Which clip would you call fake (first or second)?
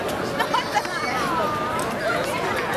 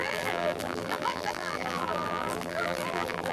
second